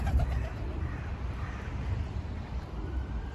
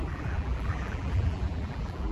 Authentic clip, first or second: first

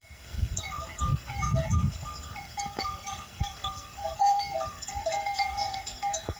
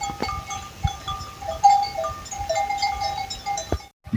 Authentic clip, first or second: second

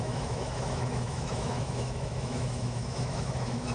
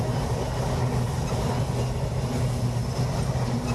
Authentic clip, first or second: second